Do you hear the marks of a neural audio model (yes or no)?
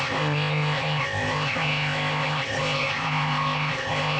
yes